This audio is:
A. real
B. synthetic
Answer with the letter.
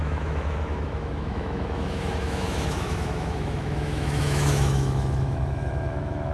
B